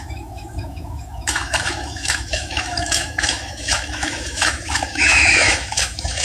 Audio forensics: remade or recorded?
remade